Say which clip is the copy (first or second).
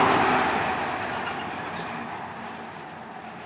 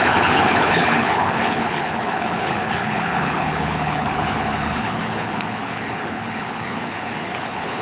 second